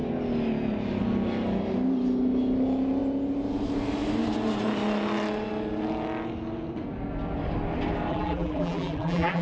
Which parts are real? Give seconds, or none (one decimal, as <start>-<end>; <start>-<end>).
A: 0.0-8.1